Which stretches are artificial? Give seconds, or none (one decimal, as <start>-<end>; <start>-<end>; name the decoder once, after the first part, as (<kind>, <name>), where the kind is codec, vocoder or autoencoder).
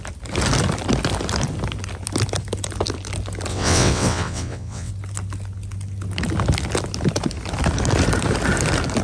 3.5-4.9 (vocoder, WaveNeXt)